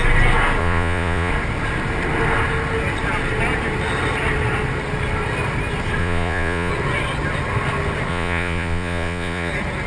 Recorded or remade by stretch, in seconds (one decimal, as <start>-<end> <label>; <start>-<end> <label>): 0.0-0.6 recorded; 0.6-1.3 remade; 1.3-6.0 recorded; 6.0-6.7 remade; 6.7-8.1 recorded; 8.1-9.5 remade; 9.5-9.9 recorded